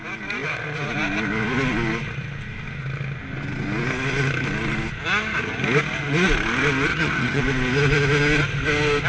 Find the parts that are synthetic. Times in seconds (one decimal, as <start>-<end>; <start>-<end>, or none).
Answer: 6.9-7.4